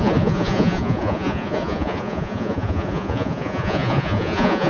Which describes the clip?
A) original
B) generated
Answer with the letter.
B